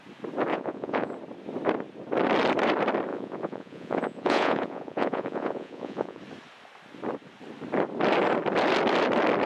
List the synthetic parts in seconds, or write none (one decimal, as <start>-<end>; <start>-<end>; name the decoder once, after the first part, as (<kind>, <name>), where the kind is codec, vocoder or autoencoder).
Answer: 0.5-1.1 (vocoder, Vocos); 3.1-6.2